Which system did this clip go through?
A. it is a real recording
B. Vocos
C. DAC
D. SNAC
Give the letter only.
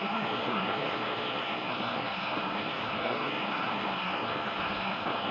D